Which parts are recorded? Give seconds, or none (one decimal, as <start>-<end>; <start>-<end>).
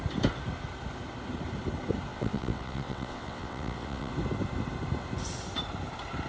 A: 0.0-2.1; 4.1-6.3